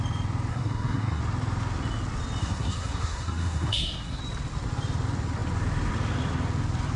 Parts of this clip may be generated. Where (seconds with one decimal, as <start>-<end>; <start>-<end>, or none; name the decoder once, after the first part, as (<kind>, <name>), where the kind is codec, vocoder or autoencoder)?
0.5-1.2 (codec, SNAC); 2.4-4.2